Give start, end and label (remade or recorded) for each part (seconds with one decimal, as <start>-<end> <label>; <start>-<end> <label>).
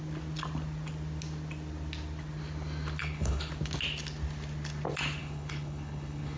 0.0-3.0 recorded; 3.0-3.5 remade; 3.5-5.2 recorded; 5.2-6.4 remade